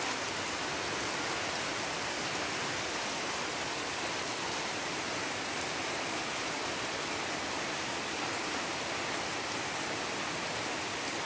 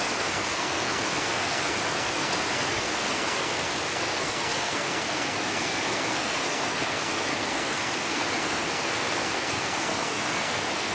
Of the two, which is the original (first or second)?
first